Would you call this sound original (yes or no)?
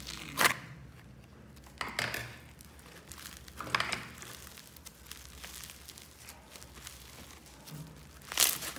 yes